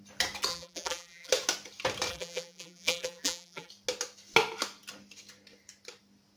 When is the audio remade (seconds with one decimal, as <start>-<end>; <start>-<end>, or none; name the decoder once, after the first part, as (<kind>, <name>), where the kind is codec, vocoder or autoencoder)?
0.5-1.3 (vocoder, BigVGAN v2); 2.1-3.7